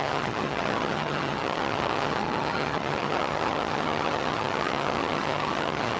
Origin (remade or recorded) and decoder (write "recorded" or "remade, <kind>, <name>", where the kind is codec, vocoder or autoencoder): remade, vocoder, HiFi-GAN